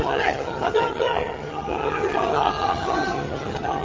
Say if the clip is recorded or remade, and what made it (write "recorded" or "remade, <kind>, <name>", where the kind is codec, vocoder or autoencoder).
remade, vocoder, HiFi-GAN